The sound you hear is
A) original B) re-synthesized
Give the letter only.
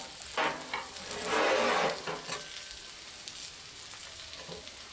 A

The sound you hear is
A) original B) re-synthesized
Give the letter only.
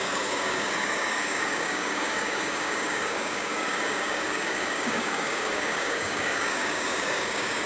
B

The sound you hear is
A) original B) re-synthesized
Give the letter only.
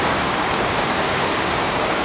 B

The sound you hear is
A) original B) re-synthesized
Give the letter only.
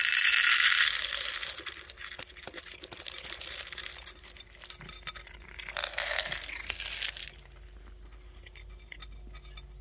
A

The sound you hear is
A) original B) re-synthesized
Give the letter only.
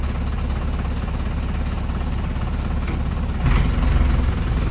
A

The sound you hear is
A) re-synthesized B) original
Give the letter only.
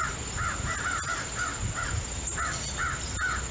B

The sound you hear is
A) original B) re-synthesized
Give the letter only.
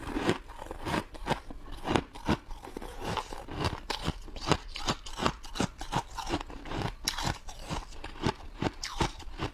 A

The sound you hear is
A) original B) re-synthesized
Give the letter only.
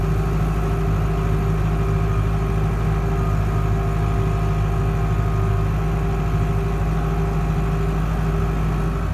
A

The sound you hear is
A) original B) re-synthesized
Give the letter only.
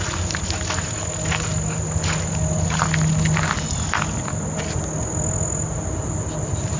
A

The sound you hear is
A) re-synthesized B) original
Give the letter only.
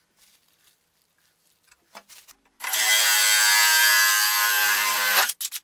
B